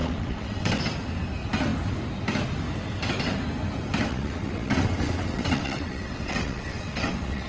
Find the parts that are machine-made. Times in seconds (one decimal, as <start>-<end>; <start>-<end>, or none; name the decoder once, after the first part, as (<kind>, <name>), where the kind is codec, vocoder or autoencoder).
0.0-0.8 (vocoder, WaveNeXt); 4.1-7.5